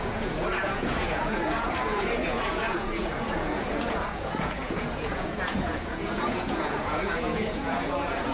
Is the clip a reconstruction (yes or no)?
yes